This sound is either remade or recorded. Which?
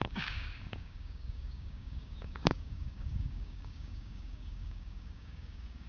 remade